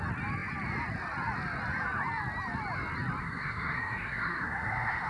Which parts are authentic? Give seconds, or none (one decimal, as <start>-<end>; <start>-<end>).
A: 0.0-3.2